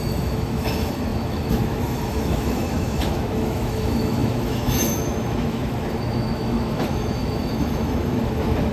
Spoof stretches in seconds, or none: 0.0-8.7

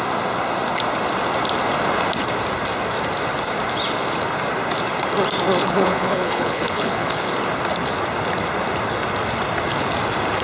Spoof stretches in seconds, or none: 5.6-7.3

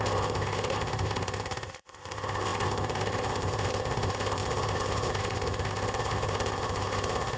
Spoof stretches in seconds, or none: 0.0-7.4

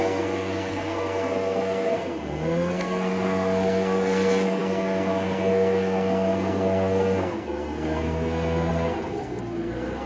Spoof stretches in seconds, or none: 0.0-10.1